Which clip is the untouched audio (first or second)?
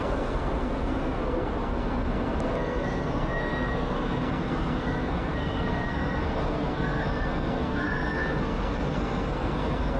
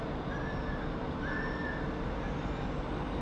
second